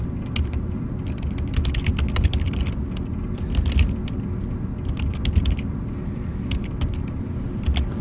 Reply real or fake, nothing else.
real